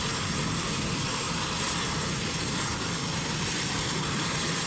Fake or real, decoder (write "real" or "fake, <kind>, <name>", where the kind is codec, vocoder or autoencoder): real